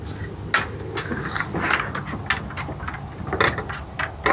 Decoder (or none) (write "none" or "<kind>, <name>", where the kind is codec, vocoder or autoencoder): none